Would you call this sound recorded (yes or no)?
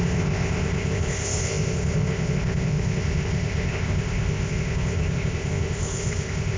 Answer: no